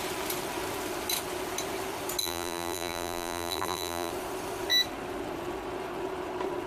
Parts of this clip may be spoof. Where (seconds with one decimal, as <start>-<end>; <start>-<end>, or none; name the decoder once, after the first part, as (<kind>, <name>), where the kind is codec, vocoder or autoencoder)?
2.2-4.1 (vocoder, BigVGAN v2)